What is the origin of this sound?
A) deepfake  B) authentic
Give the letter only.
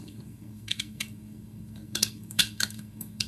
A